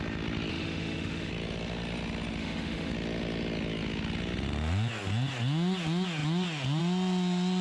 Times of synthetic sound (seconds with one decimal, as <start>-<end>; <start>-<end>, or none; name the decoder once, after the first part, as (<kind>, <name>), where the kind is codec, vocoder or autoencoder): 0.5-1.3 (autoencoder, DAC-VAE); 2.4-2.9